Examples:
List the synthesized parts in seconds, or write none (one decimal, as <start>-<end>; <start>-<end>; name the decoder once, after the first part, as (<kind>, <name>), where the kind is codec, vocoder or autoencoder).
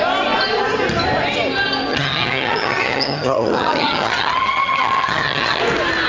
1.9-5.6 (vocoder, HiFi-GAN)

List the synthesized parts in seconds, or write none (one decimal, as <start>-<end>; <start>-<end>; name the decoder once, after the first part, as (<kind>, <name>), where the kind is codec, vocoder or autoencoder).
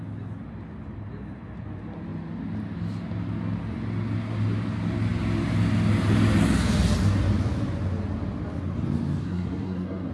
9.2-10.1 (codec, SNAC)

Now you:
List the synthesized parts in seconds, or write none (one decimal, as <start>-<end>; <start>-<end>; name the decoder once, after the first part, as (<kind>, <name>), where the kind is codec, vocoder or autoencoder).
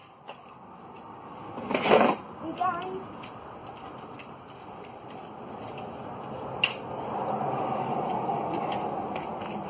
none